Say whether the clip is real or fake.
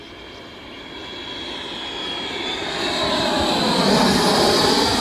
real